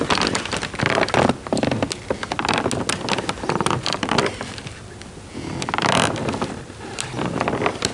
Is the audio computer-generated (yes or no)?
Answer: no